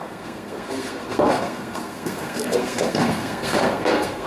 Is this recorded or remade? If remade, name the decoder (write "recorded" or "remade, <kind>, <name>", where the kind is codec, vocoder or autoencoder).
remade, codec, SNAC